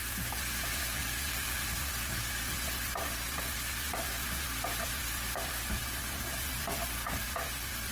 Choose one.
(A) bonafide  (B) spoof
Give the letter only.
A